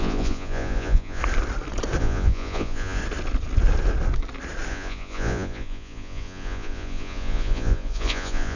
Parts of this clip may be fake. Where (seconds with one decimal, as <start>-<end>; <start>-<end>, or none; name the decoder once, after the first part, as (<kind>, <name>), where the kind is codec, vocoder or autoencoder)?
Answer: 0.0-1.2 (vocoder, Vocos); 2.0-3.0; 4.7-8.6